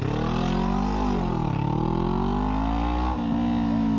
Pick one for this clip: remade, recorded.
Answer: recorded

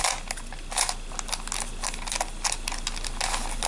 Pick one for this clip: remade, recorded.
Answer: recorded